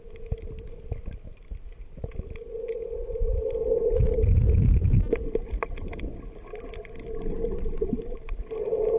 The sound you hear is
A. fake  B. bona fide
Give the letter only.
B